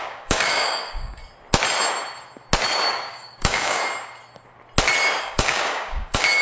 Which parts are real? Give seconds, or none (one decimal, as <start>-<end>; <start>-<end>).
1.2-2.9; 3.8-5.2